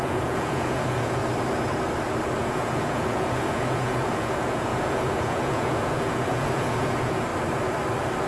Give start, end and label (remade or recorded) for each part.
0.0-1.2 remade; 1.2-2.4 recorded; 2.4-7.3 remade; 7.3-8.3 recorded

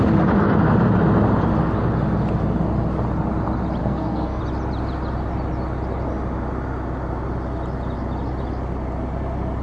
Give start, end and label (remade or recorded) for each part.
0.0-3.8 recorded; 3.8-4.4 remade; 4.4-9.6 recorded

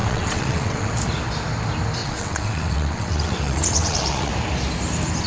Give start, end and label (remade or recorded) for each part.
0.0-0.9 remade; 0.9-2.0 recorded; 2.0-4.3 remade; 4.3-5.3 recorded

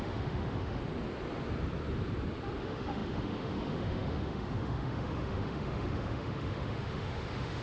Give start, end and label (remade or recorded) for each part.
0.0-0.8 remade; 0.8-2.6 recorded; 2.6-7.6 remade

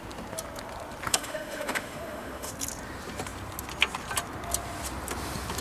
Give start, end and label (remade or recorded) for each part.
0.0-1.1 recorded; 1.1-2.5 remade; 2.5-5.6 recorded